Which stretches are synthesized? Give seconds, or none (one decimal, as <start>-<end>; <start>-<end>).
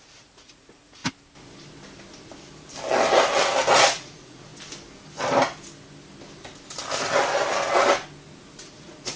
0.0-1.0; 3.8-4.5; 8.4-9.2